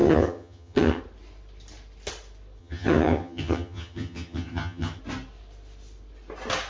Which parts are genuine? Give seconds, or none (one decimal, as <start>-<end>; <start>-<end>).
1.0-2.6; 5.0-6.7

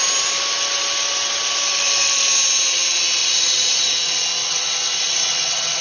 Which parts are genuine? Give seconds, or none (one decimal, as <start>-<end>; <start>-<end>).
0.0-3.2; 3.9-4.4

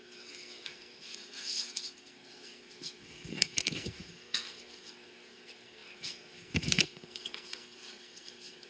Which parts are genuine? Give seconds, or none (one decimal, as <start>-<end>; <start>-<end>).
none